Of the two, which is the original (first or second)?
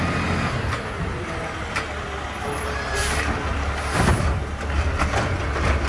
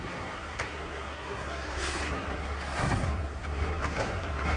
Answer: first